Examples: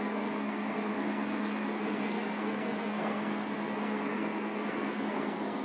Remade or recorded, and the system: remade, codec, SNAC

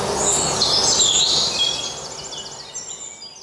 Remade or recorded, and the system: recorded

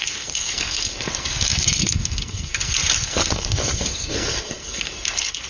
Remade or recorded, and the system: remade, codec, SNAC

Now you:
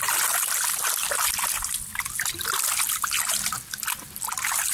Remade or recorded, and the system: recorded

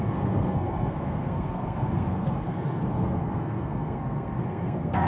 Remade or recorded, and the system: remade, codec, SNAC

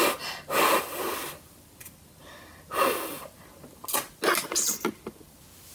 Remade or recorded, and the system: recorded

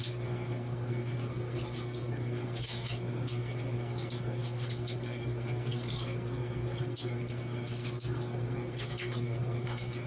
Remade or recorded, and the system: remade, codec, SNAC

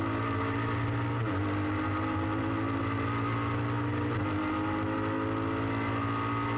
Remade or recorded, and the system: recorded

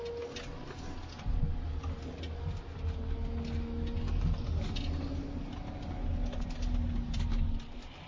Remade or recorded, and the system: recorded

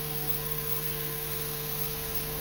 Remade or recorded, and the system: remade, codec, SNAC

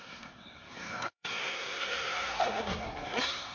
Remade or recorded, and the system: remade, codec, SNAC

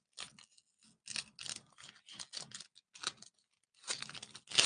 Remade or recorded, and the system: recorded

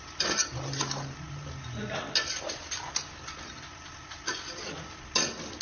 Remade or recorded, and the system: recorded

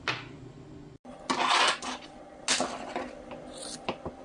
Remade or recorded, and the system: recorded